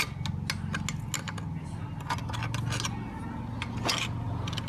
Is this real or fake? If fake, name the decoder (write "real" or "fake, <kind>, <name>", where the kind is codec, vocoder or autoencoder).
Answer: real